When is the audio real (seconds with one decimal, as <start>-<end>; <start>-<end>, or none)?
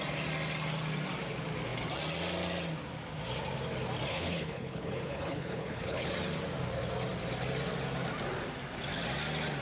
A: 0.0-4.1; 6.1-9.6